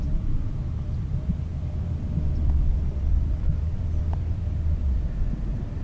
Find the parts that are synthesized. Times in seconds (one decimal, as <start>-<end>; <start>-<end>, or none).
0.0-1.5; 2.3-5.8